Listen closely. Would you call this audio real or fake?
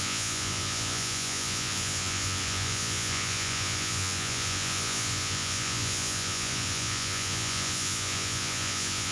fake